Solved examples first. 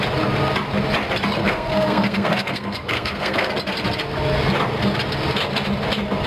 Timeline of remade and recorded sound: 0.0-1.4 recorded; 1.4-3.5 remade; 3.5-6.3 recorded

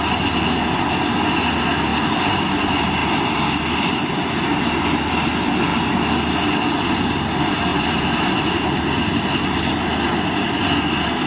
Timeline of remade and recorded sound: 0.0-1.9 recorded; 1.9-2.6 remade; 2.6-7.7 recorded; 7.7-9.9 remade; 9.9-11.3 recorded